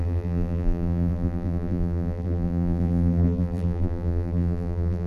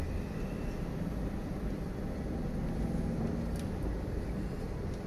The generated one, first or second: first